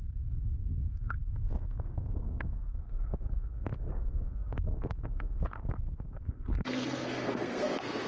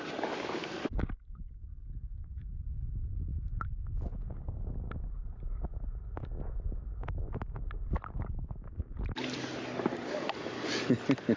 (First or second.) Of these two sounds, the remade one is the first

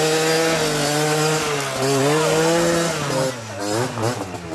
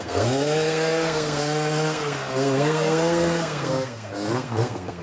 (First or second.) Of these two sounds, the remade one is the second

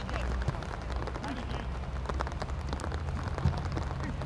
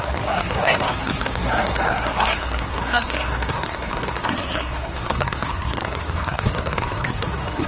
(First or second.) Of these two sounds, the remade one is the second